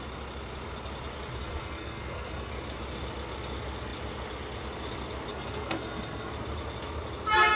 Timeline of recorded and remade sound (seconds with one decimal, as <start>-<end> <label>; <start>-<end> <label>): 0.0-1.4 recorded; 1.4-2.5 remade; 2.5-5.3 recorded; 5.3-6.3 remade; 6.3-7.6 recorded